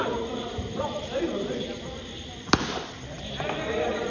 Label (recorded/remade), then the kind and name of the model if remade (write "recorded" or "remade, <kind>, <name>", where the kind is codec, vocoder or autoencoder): remade, vocoder, BigVGAN v2